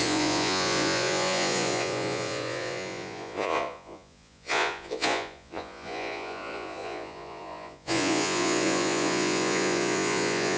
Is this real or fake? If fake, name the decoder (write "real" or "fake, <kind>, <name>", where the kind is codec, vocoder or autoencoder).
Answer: fake, vocoder, Vocos